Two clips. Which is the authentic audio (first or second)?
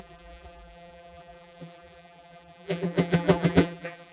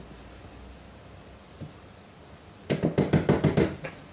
second